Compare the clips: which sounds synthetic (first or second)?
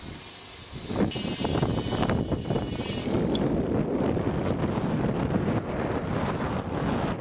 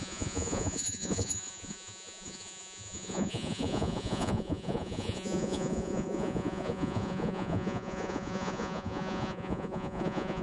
second